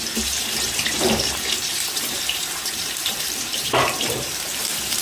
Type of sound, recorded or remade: remade